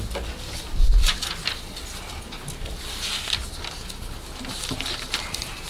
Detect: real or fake real